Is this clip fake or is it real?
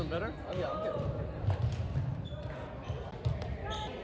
fake